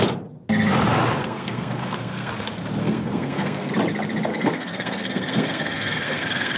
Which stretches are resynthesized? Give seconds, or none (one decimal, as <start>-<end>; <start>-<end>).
1.2-2.3; 2.8-3.7; 4.3-6.6